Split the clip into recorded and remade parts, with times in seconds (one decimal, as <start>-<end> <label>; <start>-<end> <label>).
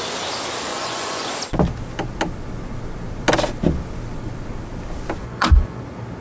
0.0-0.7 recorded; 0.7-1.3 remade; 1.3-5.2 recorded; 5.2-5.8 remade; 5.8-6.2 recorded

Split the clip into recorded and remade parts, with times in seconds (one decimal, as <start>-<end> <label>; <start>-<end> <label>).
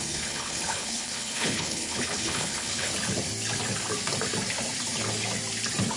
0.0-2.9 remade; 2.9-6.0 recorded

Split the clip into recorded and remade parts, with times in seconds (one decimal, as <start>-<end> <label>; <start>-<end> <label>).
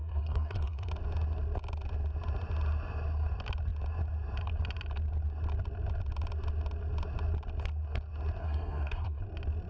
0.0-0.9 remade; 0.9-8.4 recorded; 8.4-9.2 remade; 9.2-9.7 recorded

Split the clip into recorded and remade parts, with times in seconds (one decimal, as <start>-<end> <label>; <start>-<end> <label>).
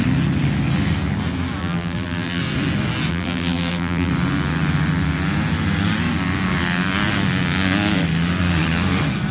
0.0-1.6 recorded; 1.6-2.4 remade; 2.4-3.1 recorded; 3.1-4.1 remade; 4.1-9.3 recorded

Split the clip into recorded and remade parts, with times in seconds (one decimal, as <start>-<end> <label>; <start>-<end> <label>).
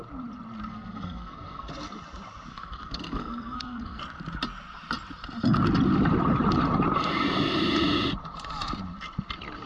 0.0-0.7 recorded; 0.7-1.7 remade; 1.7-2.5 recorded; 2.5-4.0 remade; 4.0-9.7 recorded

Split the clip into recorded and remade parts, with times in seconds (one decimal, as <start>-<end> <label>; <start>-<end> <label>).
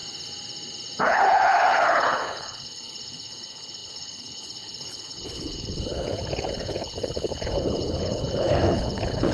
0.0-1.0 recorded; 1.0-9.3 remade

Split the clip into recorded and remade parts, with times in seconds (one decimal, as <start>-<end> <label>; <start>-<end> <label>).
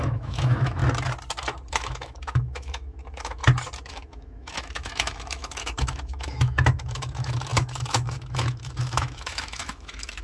0.0-0.8 remade; 0.8-1.7 recorded; 1.7-3.4 remade; 3.4-3.9 recorded; 3.9-10.2 remade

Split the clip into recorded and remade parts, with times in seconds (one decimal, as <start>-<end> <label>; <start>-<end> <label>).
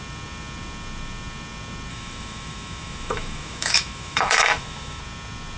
0.0-1.9 recorded; 1.9-5.0 remade; 5.0-5.6 recorded